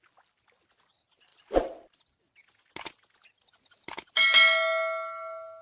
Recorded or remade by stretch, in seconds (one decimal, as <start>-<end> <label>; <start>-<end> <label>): 0.0-5.6 recorded